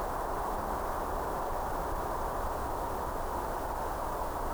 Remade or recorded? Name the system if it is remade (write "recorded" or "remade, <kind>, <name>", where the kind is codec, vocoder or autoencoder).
recorded